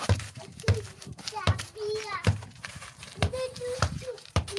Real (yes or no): no